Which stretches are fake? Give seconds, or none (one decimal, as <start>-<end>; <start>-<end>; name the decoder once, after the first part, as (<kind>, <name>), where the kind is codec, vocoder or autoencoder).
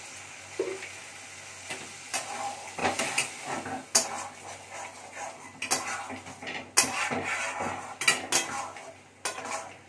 2.8-3.3 (vocoder, BigVGAN v2)